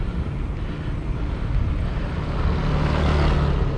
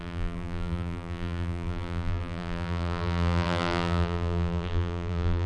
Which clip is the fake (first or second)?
second